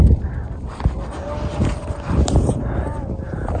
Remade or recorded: recorded